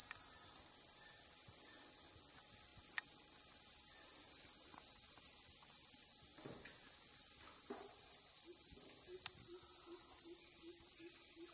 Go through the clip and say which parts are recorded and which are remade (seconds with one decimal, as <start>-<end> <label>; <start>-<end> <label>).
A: 0.0-11.5 recorded